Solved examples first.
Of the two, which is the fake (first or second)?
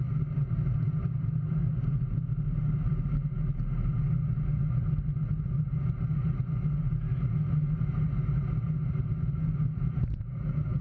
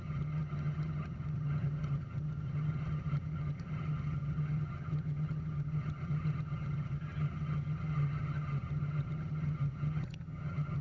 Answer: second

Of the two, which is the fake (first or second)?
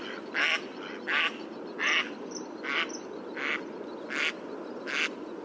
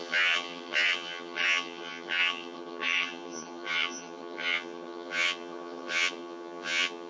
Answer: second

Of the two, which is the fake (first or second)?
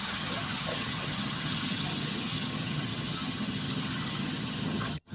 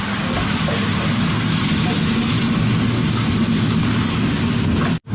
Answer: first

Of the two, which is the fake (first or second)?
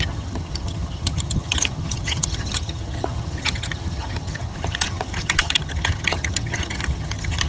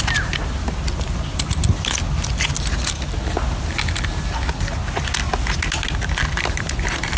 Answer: first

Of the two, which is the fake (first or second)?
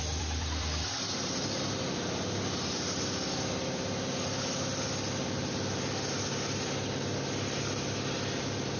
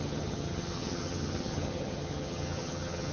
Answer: second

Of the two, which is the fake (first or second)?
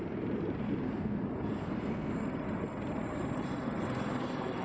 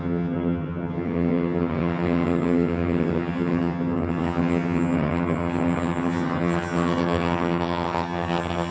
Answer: second